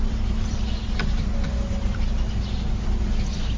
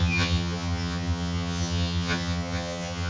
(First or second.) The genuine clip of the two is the first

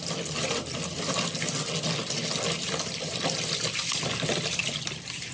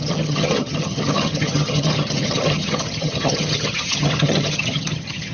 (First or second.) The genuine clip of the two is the first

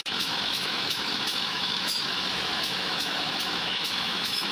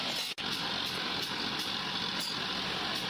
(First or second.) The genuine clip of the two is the second